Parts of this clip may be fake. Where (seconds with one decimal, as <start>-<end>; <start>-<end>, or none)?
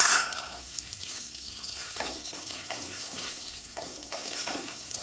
0.0-5.0